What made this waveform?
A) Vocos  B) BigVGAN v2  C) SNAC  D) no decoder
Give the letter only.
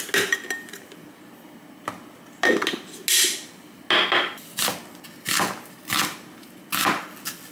D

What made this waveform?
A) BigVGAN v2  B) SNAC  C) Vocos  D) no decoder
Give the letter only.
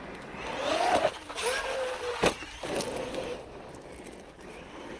D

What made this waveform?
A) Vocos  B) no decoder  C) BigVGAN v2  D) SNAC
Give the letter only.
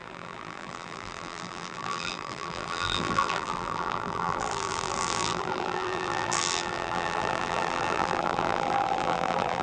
C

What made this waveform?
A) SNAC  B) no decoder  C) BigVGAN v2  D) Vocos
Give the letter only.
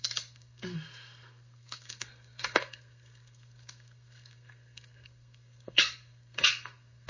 A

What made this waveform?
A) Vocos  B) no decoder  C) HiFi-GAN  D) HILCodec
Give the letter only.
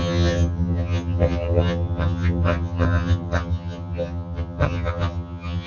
C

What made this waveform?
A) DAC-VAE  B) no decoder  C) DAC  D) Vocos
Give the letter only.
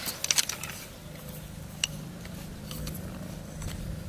B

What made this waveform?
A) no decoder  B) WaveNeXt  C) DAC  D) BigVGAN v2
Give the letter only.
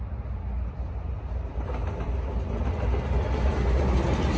A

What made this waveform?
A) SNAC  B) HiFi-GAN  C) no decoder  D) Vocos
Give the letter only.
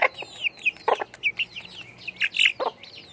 C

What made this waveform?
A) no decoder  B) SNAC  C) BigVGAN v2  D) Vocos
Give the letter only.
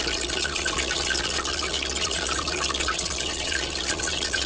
D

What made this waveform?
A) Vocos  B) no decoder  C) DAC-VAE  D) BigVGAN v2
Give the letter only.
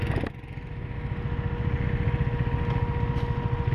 B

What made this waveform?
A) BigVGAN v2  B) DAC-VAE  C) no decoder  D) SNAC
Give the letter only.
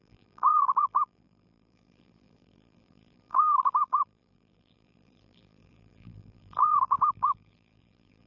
A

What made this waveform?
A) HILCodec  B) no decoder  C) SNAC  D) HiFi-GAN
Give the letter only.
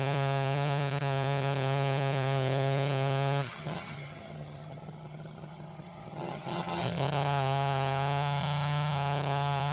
D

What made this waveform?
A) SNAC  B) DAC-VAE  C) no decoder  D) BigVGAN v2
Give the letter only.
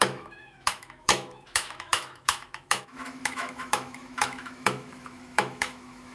B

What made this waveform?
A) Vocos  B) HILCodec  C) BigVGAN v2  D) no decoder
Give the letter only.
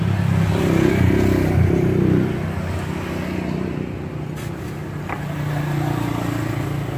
D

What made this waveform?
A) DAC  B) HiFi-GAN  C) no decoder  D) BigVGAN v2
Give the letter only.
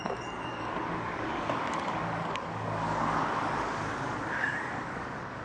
A